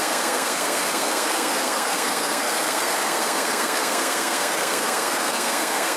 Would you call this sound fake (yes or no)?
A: yes